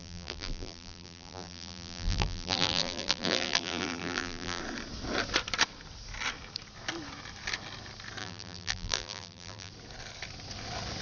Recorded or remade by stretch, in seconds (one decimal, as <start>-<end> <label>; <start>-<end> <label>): 0.0-4.6 remade; 4.6-8.2 recorded; 8.2-9.7 remade; 9.7-11.0 recorded